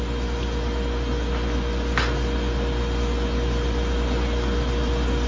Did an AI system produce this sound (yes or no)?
no